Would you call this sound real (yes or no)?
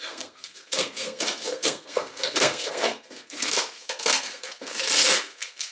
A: no